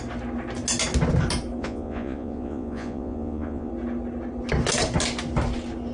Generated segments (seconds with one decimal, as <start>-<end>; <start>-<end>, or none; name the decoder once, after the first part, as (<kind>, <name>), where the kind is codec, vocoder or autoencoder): 1.6-3.7 (vocoder, Vocos)